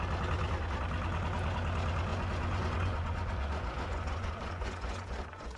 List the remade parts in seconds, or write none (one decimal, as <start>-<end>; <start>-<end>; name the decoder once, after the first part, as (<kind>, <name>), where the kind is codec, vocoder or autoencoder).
2.1-5.6 (vocoder, Vocos)